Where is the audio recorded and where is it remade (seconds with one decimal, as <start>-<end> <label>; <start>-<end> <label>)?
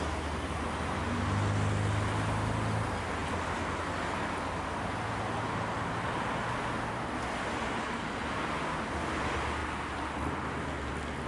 0.0-11.3 recorded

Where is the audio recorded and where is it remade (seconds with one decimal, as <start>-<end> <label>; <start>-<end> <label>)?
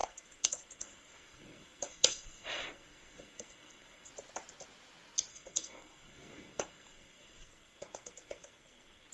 0.0-4.1 remade; 4.1-5.3 recorded; 5.3-9.1 remade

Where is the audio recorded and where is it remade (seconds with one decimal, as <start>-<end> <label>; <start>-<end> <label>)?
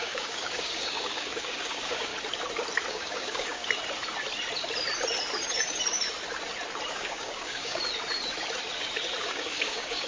0.0-2.1 remade; 2.1-2.9 recorded; 2.9-3.6 remade; 3.6-6.9 recorded; 6.9-7.8 remade; 7.8-9.2 recorded; 9.2-10.1 remade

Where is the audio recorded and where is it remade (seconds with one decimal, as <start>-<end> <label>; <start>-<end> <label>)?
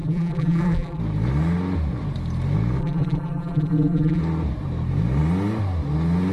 0.0-1.0 remade; 1.0-2.8 recorded; 2.8-4.2 remade; 4.2-6.3 recorded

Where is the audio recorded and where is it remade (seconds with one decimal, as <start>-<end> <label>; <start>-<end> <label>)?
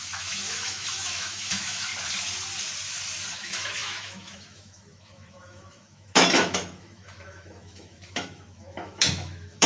0.0-1.9 remade; 1.9-3.3 recorded; 3.3-9.7 remade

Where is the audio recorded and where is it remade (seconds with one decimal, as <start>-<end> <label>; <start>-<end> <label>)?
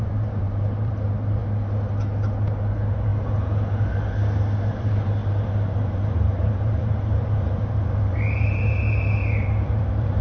0.0-1.4 remade; 1.4-2.7 recorded; 2.7-3.1 remade; 3.1-4.7 recorded; 4.7-10.2 remade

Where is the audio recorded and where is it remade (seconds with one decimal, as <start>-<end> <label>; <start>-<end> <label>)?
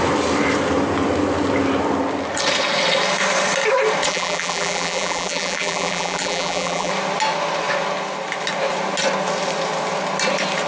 0.0-4.1 recorded; 4.1-6.9 remade; 6.9-10.7 recorded